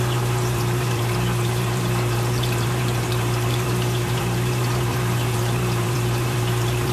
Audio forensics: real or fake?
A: fake